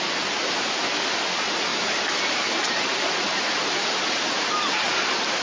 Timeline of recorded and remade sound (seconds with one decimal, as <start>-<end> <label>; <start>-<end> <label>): 0.0-5.4 recorded